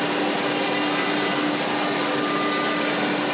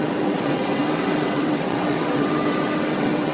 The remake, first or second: second